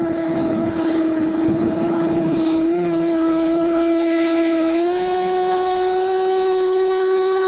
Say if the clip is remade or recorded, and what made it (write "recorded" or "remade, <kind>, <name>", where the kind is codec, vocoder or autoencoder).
remade, codec, HILCodec